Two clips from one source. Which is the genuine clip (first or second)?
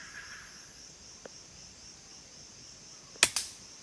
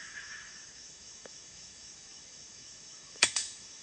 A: first